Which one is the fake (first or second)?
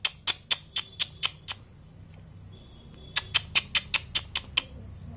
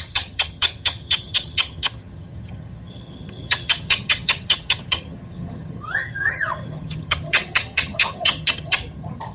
second